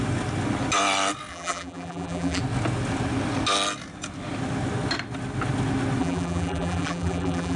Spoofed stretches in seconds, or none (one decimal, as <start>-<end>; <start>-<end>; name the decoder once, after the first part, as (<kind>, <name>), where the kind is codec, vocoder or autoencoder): 1.3-2.4 (vocoder, BigVGAN v2); 6.0-7.6